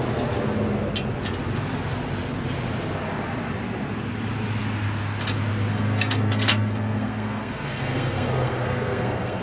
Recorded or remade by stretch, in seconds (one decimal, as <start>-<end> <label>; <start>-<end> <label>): 0.0-5.7 recorded; 5.7-9.4 remade